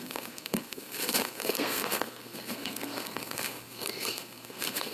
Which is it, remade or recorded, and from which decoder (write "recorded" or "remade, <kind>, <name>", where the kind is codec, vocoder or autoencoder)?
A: remade, codec, SNAC